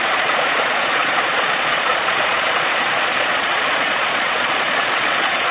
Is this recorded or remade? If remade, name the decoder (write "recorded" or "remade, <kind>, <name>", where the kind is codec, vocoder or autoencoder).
remade, vocoder, Vocos